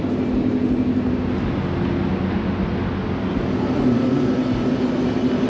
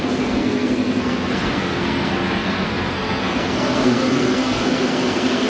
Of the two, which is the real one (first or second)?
first